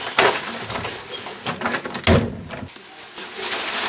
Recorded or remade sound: recorded